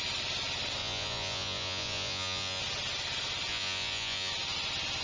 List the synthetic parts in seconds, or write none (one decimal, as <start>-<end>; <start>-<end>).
0.8-2.6; 3.5-4.3